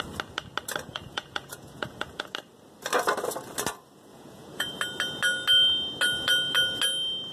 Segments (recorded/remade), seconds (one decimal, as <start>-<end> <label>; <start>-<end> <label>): 0.0-0.9 recorded; 0.9-2.3 remade; 2.3-4.1 recorded; 4.1-4.8 remade; 4.8-7.3 recorded